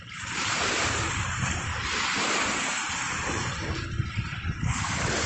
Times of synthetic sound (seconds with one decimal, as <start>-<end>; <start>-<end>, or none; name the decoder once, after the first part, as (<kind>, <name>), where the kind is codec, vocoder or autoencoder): 0.0-5.3 (vocoder, BigVGAN v2)